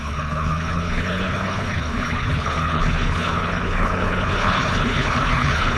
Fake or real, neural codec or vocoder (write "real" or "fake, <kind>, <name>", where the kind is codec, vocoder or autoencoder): fake, codec, HILCodec